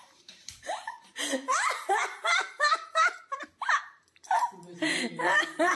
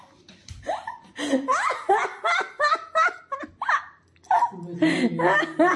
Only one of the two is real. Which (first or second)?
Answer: second